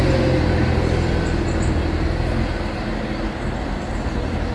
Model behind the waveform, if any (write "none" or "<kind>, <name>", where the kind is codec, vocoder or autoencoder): none